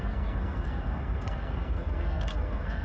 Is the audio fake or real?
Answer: fake